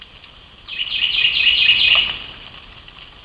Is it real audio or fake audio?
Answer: real